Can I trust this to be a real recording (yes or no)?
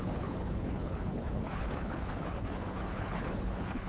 no